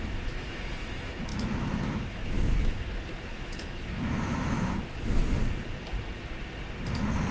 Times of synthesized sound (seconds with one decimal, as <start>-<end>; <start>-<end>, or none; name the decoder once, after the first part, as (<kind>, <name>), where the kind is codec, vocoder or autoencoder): 0.0-5.4 (autoencoder, DAC-VAE)